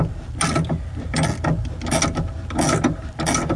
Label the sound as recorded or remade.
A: recorded